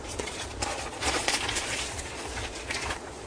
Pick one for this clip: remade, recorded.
remade